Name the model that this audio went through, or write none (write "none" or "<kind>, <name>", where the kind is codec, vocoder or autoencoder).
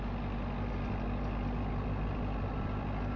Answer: none